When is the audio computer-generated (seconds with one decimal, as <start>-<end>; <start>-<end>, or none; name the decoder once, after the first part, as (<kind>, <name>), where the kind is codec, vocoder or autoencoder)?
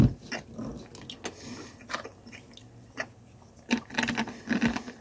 none